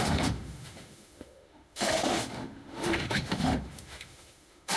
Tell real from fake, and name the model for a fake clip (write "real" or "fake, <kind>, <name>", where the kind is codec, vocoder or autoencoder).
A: fake, autoencoder, DAC-VAE